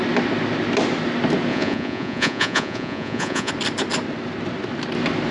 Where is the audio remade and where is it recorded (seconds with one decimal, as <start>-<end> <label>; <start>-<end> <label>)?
0.0-1.5 recorded; 1.5-3.5 remade; 3.5-5.3 recorded